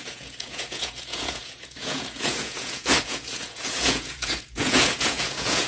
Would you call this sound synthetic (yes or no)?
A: yes